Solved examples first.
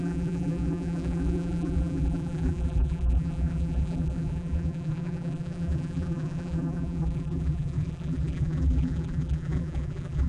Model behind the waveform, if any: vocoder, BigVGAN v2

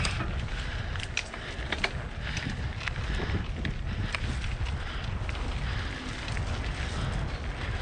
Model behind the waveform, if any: none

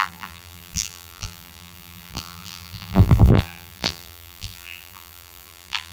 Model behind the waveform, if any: vocoder, BigVGAN v2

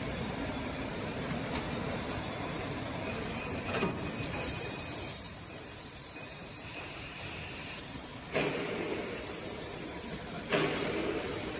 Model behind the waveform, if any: vocoder, BigVGAN v2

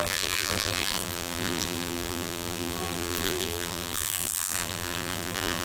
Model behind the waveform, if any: vocoder, BigVGAN v2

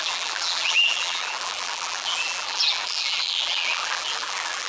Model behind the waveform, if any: vocoder, BigVGAN v2